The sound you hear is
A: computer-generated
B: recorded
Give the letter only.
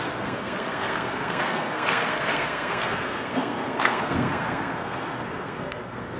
A